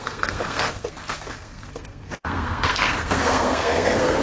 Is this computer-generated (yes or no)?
yes